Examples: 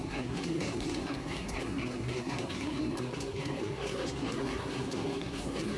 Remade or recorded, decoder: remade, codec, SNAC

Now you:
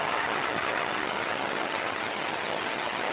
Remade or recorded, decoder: remade, vocoder, HiFi-GAN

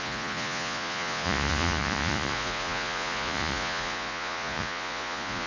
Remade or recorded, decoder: remade, vocoder, Vocos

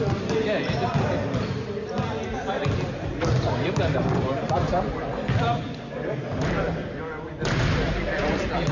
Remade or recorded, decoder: recorded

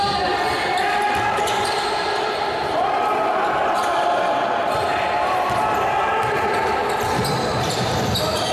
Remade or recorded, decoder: recorded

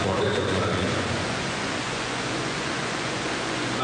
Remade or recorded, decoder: remade, vocoder, Vocos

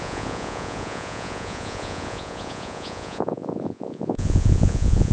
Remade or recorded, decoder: remade, vocoder, Vocos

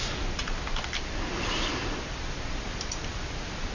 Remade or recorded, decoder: recorded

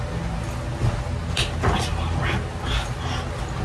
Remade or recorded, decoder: recorded